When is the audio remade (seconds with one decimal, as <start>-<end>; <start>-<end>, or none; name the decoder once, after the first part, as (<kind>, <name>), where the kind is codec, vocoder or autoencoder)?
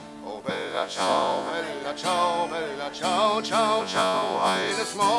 0.5-1.5 (vocoder, Vocos); 3.8-4.7